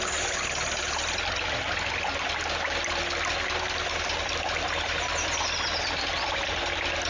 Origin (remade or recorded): recorded